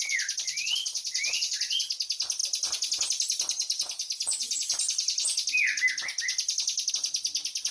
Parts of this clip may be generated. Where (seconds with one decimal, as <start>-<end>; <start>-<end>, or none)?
none